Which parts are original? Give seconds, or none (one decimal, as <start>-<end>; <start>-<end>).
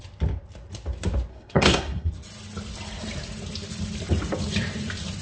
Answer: 0.0-1.3; 2.1-5.2